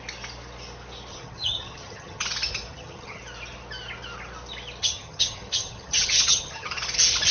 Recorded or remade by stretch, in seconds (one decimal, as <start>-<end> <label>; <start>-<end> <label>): 0.0-1.1 recorded; 1.1-2.2 remade; 2.2-2.7 recorded; 2.7-3.2 remade; 3.2-4.8 recorded; 4.8-6.8 remade; 6.8-7.3 recorded